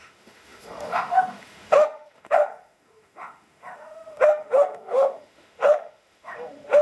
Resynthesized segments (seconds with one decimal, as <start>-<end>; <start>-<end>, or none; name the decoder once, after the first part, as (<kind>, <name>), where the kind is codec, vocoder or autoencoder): 0.0-6.8 (autoencoder, DAC-VAE)